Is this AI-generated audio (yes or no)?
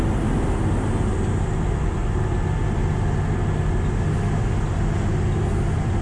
no